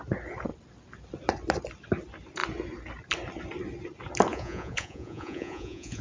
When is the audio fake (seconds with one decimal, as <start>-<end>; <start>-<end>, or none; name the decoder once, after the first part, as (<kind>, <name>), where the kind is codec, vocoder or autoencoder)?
4.3-6.0 (vocoder, Vocos)